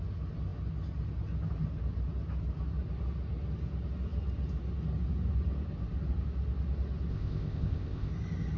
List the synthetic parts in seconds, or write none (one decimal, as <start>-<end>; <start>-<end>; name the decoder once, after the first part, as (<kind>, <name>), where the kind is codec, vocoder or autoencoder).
7.1-8.1 (codec, ZipCodec)